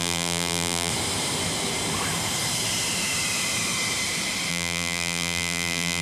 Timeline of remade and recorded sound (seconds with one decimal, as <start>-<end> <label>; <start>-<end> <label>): 0.0-0.9 remade; 0.9-4.5 recorded; 4.5-6.0 remade